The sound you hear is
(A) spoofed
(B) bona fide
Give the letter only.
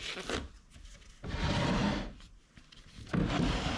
B